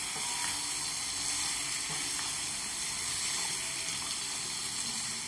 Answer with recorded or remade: recorded